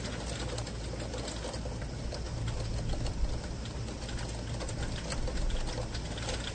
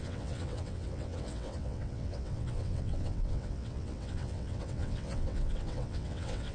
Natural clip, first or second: first